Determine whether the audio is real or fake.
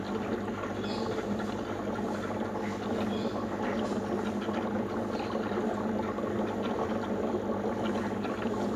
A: real